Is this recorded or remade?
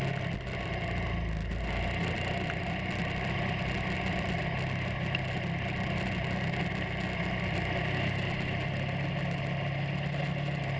recorded